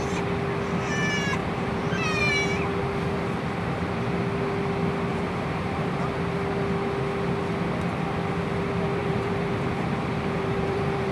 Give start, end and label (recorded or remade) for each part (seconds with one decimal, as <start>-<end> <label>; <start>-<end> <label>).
0.0-1.4 recorded; 1.4-2.2 remade; 2.2-5.1 recorded; 5.1-6.0 remade; 6.0-9.0 recorded; 9.0-11.1 remade

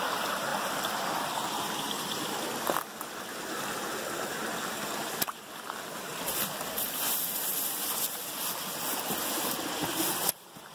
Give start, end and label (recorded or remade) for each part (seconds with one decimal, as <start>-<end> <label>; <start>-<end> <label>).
0.0-0.5 recorded; 0.5-2.5 remade; 2.5-6.1 recorded; 6.1-7.5 remade; 7.5-10.7 recorded